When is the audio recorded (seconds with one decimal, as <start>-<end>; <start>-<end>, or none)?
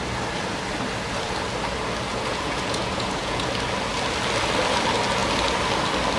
0.0-2.1; 3.5-6.2